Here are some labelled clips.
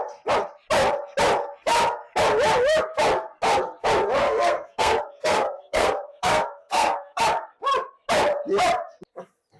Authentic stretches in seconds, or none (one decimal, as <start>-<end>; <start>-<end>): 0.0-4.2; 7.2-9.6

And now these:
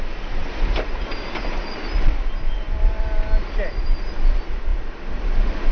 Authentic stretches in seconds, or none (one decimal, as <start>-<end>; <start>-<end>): 0.0-5.7

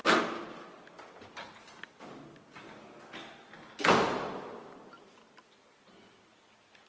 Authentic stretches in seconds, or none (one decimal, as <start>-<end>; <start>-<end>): 0.0-6.9

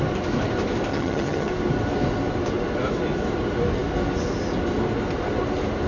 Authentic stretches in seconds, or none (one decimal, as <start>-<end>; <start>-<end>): 0.0-0.9; 1.5-5.9